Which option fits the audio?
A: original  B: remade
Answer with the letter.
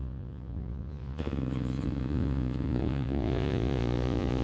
B